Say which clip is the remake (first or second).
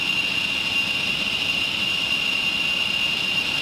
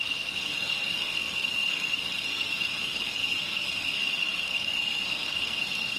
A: second